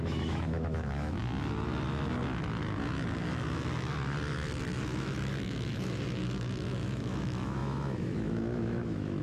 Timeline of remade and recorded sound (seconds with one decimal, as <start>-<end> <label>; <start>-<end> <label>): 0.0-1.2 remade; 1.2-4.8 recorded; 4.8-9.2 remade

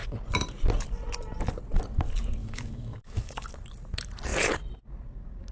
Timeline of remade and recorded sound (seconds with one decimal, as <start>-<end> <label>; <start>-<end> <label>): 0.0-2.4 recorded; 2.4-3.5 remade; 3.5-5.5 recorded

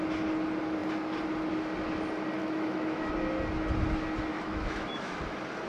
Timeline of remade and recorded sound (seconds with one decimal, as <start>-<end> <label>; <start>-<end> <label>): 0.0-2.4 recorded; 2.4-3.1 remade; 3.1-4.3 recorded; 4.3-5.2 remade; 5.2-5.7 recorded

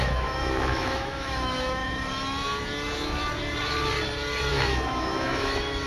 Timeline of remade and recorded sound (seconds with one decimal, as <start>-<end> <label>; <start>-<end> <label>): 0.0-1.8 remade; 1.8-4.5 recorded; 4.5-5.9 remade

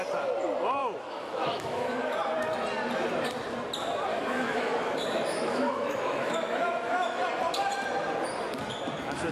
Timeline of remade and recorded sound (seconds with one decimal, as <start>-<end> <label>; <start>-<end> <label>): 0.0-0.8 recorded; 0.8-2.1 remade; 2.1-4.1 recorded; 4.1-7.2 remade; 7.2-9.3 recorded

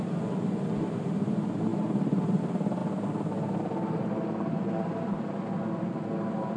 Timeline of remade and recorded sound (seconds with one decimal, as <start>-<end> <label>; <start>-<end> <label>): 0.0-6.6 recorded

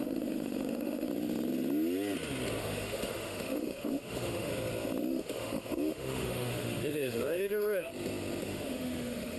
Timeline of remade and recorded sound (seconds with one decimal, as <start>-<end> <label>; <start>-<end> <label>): 0.0-1.1 remade; 1.1-2.6 recorded; 2.6-4.5 remade; 4.5-5.1 recorded; 5.1-7.9 remade; 7.9-8.4 recorded; 8.4-9.4 remade

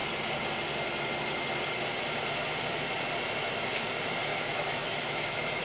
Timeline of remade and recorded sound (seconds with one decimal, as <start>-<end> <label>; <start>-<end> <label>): 0.0-4.3 recorded; 4.3-5.6 remade